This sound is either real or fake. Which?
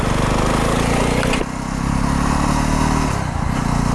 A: real